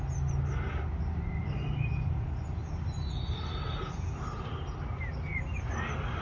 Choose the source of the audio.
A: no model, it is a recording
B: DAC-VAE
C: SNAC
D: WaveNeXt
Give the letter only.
A